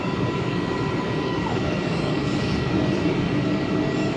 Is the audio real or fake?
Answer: fake